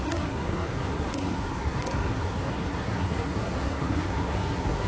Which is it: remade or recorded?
remade